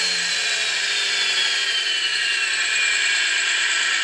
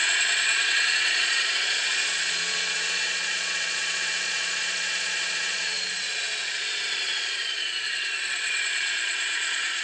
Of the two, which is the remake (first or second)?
second